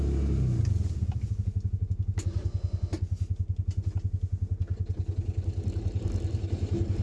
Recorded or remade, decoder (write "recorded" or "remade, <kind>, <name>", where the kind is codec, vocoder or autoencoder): recorded